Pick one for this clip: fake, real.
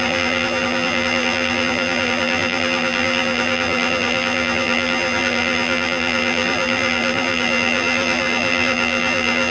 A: fake